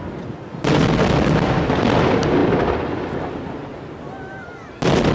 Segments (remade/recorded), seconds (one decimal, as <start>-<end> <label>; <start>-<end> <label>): 0.0-5.1 recorded